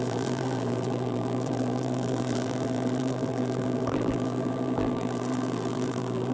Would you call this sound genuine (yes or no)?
no